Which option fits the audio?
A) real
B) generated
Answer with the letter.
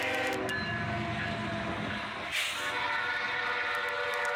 A